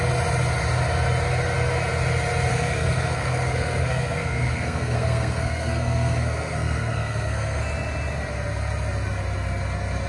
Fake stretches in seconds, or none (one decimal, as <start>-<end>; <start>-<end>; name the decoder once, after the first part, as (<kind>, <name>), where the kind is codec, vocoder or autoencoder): 2.5-7.6 (codec, SNAC)